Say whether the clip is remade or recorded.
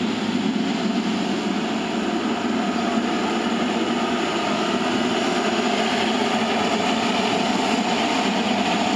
recorded